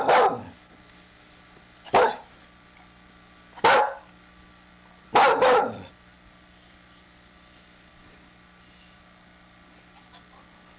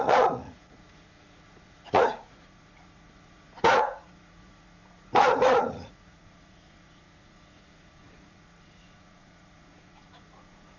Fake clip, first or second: second